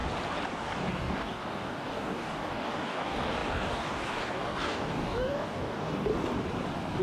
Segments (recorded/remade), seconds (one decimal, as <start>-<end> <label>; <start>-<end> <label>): 0.0-0.5 recorded; 0.5-6.1 remade; 6.1-7.0 recorded